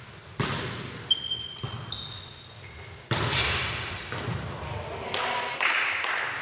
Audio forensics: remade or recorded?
recorded